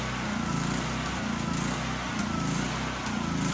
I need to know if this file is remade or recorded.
recorded